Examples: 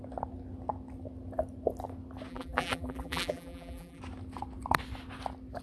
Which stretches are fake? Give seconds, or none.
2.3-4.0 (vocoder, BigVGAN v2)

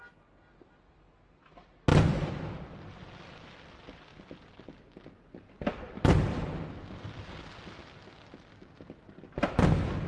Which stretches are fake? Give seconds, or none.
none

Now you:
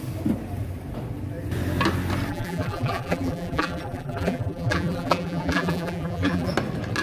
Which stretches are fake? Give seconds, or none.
2.3-6.5 (vocoder, BigVGAN v2)